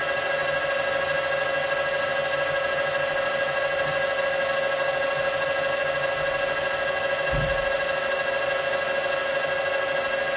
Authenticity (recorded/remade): recorded